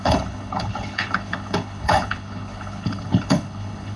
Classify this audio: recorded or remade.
remade